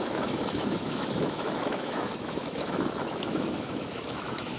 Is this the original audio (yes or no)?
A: no